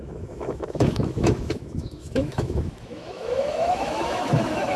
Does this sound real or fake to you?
fake